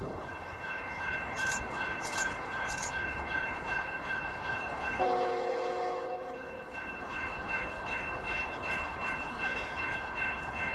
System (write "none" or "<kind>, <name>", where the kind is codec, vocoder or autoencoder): codec, HILCodec